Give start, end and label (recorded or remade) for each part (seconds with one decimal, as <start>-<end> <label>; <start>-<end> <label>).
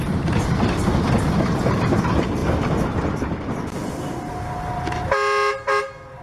0.0-6.2 recorded